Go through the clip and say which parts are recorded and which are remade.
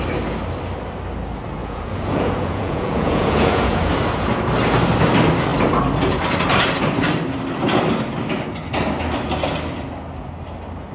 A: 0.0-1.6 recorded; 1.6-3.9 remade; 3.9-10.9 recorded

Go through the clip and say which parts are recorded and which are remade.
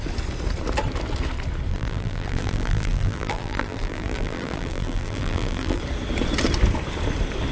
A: 0.0-1.7 recorded; 1.7-5.8 remade; 5.8-7.5 recorded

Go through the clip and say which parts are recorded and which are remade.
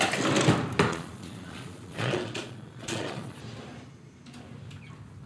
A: 0.0-0.9 recorded; 0.9-3.4 remade; 3.4-5.3 recorded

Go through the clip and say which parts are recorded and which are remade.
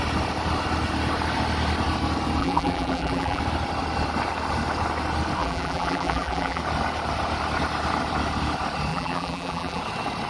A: 0.0-2.4 recorded; 2.4-3.4 remade; 3.4-5.4 recorded; 5.4-6.6 remade; 6.6-8.9 recorded; 8.9-9.8 remade; 9.8-10.3 recorded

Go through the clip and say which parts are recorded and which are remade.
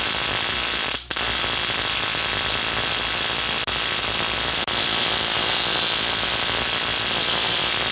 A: 0.0-7.9 recorded